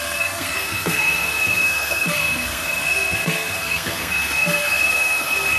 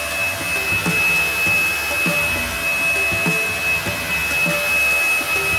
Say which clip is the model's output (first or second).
first